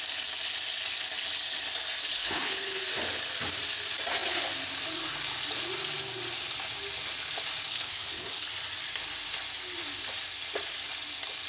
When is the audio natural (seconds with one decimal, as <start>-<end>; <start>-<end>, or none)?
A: 0.0-2.0; 2.8-7.7; 8.5-11.5

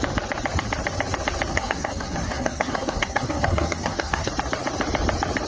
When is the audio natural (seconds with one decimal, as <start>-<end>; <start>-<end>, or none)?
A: 0.0-1.5; 4.3-5.5

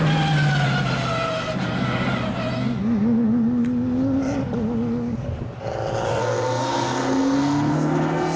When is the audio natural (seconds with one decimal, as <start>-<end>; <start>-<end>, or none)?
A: 0.0-6.1

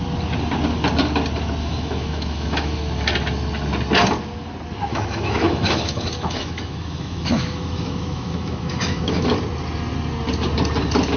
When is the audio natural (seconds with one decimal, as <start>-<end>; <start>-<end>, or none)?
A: 0.0-1.6; 2.8-4.9; 9.3-11.2

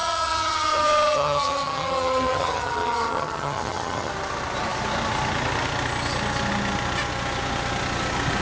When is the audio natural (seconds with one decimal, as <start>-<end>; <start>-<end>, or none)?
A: 4.1-8.4

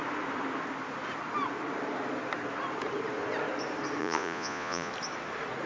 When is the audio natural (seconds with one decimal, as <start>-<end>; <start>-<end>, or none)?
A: 0.0-4.0; 4.9-5.7

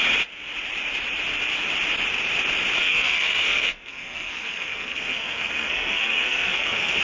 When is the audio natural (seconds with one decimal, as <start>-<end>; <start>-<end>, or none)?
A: 0.0-2.8

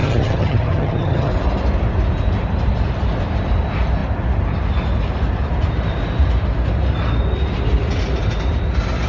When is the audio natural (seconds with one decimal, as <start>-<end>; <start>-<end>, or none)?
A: 1.3-9.1